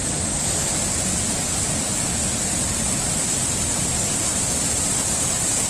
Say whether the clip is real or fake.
real